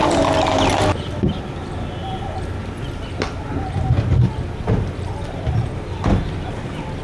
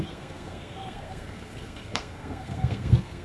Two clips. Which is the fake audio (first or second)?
second